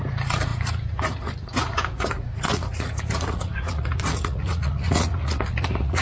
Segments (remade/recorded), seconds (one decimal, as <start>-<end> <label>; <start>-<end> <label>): 0.0-6.0 remade